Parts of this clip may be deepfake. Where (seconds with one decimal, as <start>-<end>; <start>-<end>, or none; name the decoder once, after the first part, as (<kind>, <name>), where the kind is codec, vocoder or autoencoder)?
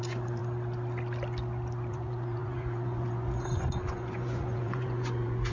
0.0-0.4 (vocoder, Vocos); 1.9-5.5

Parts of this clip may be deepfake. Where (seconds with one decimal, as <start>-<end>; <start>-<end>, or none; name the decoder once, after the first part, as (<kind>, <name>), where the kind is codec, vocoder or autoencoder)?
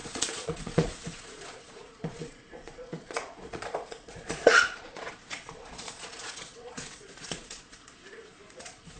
0.0-9.0 (vocoder, Vocos)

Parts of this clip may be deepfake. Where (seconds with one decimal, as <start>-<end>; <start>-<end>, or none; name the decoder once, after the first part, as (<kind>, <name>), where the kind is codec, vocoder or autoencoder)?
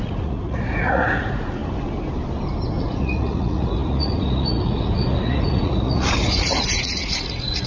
0.0-1.6 (vocoder, Vocos); 2.8-7.7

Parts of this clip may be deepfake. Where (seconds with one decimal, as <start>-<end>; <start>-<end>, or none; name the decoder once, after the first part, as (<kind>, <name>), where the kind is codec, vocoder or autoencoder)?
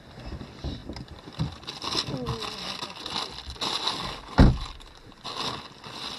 none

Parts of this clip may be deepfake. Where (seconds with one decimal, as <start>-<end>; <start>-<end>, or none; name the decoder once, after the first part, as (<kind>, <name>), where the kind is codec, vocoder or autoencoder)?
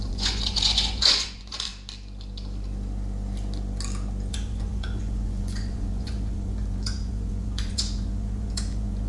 0.0-1.7 (vocoder, Vocos); 4.3-9.1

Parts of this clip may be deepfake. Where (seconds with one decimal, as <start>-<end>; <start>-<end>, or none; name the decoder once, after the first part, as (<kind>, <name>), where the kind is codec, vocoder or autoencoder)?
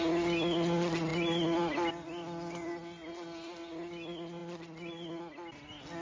none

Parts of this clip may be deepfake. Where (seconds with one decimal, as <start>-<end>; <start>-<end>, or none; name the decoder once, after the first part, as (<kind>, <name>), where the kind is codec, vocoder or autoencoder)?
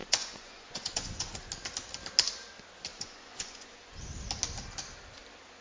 0.0-1.5 (vocoder, Vocos); 2.9-4.0